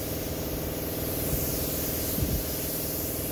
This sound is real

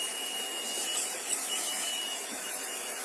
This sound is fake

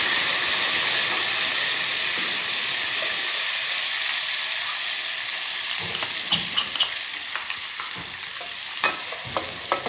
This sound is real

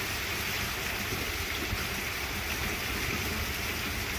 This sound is real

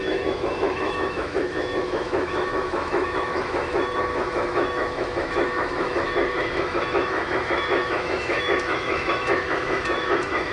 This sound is fake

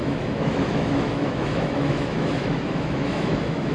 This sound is fake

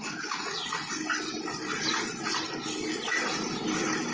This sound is real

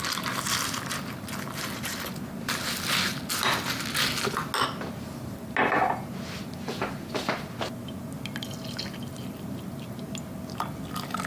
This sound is real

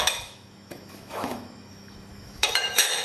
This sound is fake